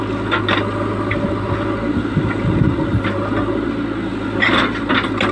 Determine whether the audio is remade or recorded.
recorded